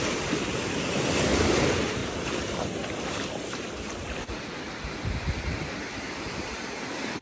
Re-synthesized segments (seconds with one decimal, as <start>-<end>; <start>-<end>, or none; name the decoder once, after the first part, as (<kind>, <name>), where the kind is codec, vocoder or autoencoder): 0.0-2.0 (vocoder, BigVGAN v2); 2.6-7.2